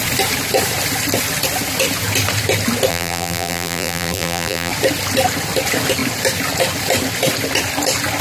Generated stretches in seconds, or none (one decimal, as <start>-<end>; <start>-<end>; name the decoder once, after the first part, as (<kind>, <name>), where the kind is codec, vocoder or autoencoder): 2.9-4.7 (vocoder, BigVGAN v2)